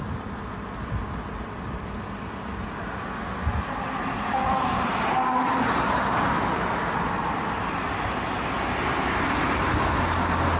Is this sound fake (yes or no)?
no